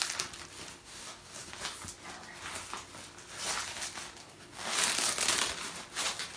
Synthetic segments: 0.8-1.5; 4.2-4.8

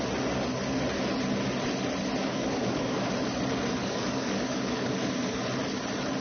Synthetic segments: 2.2-3.1; 3.8-5.1